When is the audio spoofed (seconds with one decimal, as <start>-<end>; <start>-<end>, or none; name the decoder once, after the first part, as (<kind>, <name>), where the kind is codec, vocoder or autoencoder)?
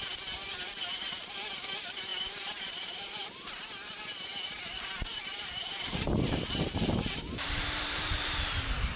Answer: 0.0-9.0 (vocoder, BigVGAN v2)